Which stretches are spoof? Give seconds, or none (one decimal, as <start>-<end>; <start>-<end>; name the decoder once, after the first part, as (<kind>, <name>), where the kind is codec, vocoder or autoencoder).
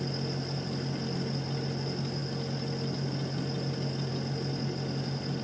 none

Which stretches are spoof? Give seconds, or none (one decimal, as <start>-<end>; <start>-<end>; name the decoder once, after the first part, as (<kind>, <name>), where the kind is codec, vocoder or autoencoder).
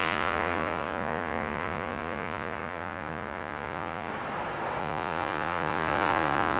0.0-4.1 (vocoder, Vocos); 4.8-6.6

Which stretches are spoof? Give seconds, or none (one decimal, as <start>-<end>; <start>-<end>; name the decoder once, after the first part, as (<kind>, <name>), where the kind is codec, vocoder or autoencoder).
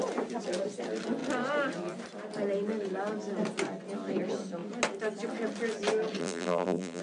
6.2-7.0 (vocoder, BigVGAN v2)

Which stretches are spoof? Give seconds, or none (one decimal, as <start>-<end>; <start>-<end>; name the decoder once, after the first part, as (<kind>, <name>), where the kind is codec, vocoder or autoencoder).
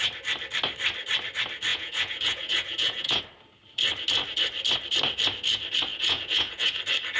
1.7-3.2 (vocoder, Vocos); 5.9-6.7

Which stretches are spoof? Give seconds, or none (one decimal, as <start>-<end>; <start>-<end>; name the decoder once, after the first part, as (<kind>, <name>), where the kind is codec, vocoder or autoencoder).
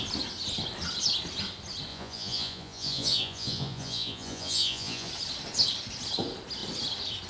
1.9-5.1 (vocoder, Vocos)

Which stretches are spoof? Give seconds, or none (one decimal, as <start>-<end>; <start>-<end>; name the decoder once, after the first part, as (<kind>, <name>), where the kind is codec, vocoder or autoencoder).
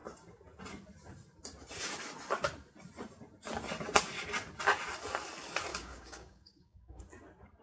5.7-7.0 (codec, DAC)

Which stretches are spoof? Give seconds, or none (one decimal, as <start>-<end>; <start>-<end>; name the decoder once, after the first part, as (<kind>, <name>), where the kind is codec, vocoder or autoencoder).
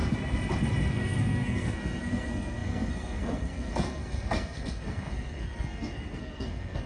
0.9-6.9 (codec, SNAC)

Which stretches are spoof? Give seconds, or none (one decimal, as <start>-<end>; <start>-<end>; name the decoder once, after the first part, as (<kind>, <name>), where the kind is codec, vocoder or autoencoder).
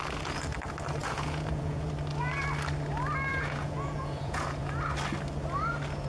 1.0-1.9 (vocoder, Vocos); 3.3-4.8